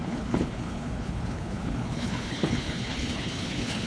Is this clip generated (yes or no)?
yes